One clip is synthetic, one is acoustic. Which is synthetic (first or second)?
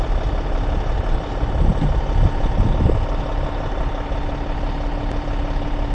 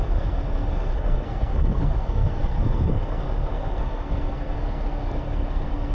second